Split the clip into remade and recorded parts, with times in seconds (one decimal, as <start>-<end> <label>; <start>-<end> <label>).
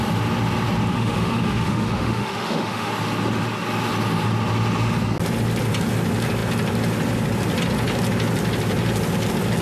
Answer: 0.0-0.9 recorded; 0.9-2.9 remade; 2.9-9.6 recorded